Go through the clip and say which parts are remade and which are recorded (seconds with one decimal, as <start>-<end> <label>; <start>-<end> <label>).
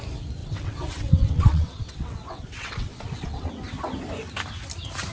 0.0-0.4 recorded; 0.4-3.5 remade; 3.5-5.1 recorded